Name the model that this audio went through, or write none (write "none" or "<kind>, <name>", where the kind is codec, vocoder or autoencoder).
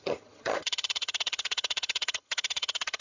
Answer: vocoder, HiFi-GAN